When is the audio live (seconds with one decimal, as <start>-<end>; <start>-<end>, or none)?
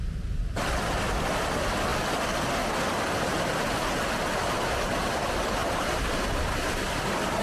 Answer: 0.0-5.6; 7.0-7.4